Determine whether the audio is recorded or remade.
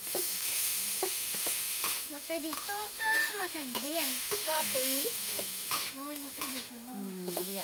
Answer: remade